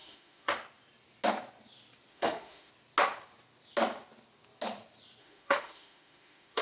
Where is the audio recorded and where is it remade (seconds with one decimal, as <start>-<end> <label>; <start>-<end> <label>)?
0.0-0.5 remade; 0.5-2.1 recorded; 2.1-2.7 remade; 2.7-5.2 recorded; 5.2-6.6 remade